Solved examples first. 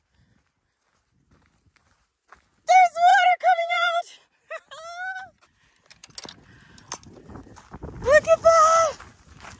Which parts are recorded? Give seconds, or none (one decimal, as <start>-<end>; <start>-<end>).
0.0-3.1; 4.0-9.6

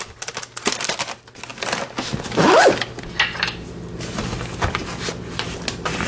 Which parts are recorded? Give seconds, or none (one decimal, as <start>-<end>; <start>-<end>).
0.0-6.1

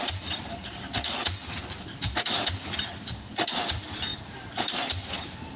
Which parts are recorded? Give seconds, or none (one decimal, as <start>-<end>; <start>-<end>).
0.6-1.8